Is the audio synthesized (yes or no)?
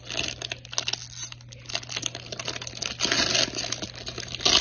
no